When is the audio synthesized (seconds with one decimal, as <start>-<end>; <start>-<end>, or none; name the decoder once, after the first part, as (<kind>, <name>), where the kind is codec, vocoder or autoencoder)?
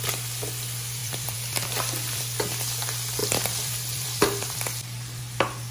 1.0-2.2 (vocoder, BigVGAN v2); 3.2-5.2